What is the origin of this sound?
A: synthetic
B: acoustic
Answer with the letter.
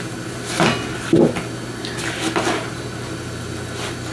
B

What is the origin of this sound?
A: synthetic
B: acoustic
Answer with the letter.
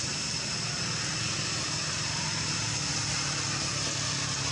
B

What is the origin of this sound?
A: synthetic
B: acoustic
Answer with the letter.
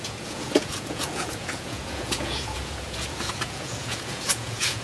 A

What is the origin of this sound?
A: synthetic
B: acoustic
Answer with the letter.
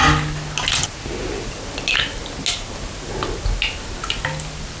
B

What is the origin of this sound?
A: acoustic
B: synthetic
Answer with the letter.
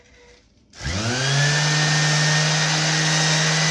A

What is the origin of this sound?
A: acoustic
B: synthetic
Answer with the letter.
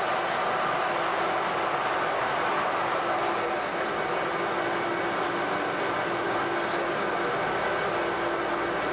A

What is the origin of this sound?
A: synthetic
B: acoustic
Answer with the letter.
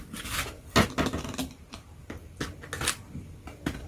B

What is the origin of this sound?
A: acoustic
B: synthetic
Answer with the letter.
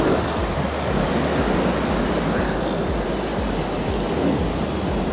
A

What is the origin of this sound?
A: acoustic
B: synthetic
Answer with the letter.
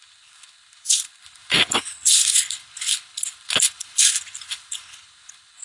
B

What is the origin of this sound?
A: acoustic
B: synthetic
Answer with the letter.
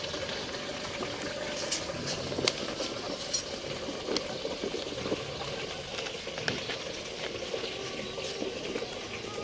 A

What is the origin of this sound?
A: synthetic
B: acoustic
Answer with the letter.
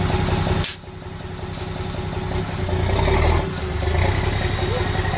B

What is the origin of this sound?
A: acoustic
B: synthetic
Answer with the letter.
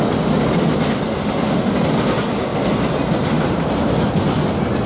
A